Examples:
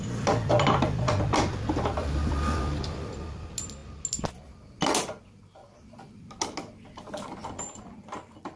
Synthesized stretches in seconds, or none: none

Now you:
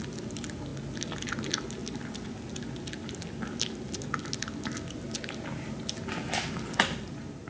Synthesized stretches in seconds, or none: none

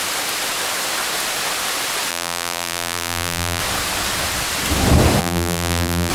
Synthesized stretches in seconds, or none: 2.1-3.6 (vocoder, BigVGAN v2); 5.2-6.1

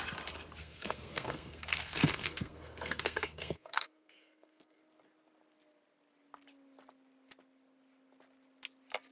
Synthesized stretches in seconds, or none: 0.6-4.8 (codec, SNAC)

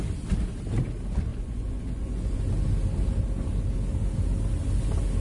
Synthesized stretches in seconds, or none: 1.3-2.4 (vocoder, Vocos)